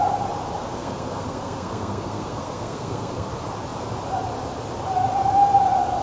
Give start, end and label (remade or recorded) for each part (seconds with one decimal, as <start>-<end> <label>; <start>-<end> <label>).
0.0-0.6 recorded; 0.6-3.3 remade; 3.3-6.0 recorded